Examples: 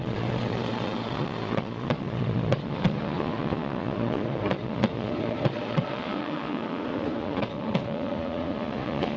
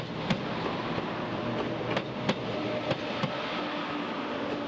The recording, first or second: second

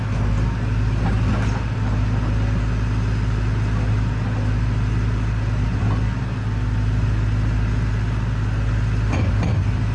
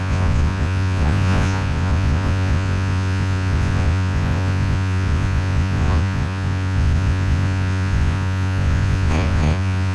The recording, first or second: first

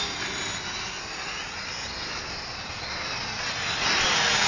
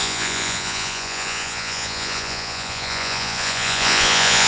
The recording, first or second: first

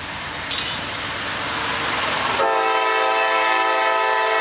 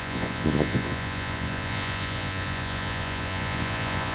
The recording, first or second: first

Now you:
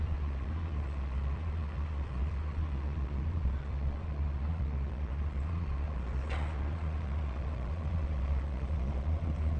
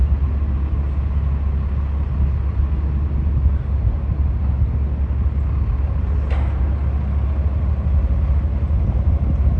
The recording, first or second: second